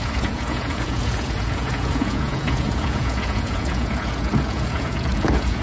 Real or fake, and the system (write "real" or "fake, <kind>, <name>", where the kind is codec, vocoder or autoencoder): fake, vocoder, Vocos